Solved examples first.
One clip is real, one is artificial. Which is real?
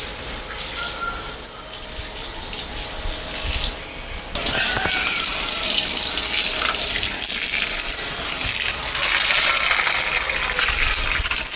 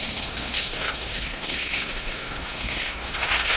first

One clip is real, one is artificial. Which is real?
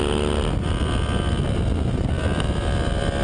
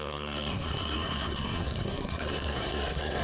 first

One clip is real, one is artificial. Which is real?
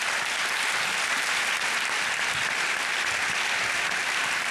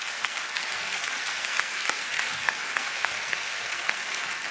first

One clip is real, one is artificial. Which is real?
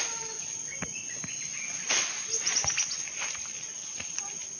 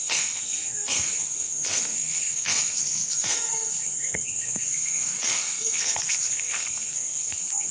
first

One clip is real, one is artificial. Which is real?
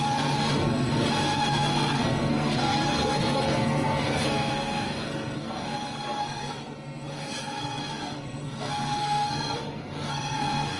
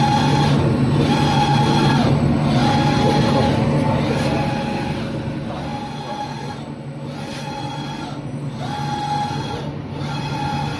second